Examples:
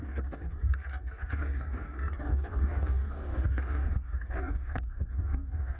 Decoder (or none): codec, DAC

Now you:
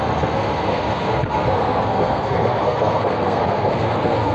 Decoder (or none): codec, SNAC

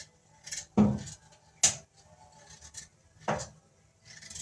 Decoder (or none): none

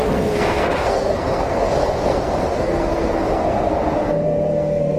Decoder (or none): codec, SNAC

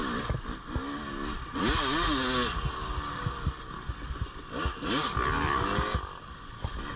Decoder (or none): none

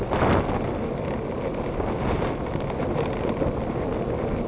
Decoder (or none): none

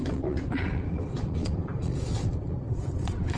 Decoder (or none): vocoder, Vocos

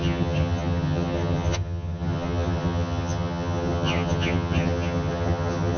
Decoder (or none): vocoder, HiFi-GAN